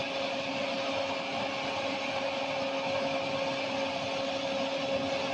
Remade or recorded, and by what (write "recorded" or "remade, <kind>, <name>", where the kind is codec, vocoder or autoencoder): recorded